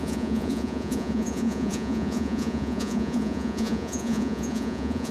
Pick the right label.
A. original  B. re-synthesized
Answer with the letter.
B